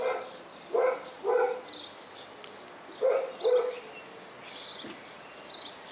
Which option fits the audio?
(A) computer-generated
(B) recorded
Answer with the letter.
B